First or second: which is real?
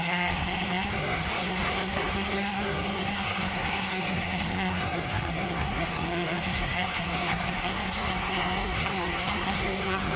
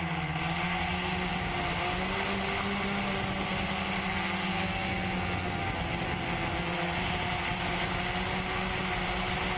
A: second